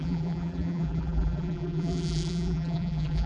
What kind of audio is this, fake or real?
fake